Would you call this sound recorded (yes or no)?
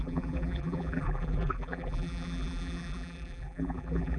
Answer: no